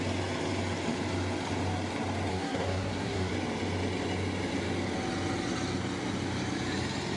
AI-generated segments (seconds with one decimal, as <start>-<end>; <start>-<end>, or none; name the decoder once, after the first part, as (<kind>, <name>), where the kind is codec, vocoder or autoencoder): 2.3-3.3 (codec, SNAC)

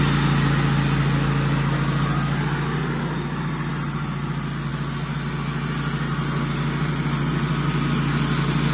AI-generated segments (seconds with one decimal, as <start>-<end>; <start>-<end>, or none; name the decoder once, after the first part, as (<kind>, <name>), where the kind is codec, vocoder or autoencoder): none

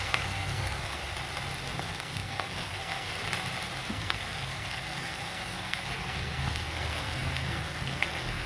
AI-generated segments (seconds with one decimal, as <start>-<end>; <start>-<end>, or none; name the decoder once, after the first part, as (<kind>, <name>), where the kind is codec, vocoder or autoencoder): 0.0-1.0 (codec, SNAC); 1.8-3.2; 3.9-8.5

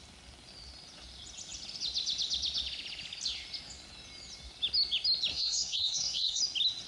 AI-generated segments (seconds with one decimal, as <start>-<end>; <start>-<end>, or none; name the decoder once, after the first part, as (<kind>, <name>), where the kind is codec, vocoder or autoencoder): 5.3-6.4 (codec, SNAC)

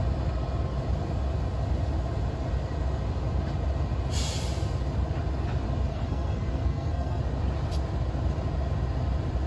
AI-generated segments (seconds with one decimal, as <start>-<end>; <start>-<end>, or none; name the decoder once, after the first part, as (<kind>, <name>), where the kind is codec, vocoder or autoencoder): 5.9-7.2 (codec, SNAC)

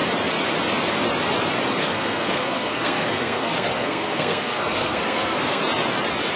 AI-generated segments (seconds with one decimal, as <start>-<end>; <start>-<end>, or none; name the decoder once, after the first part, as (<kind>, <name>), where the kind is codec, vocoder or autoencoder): 1.8-5.6 (codec, SNAC)

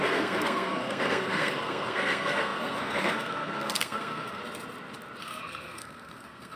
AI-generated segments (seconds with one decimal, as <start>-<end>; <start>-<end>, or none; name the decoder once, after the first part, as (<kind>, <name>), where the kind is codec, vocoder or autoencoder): 0.0-4.4 (codec, SNAC); 5.2-6.6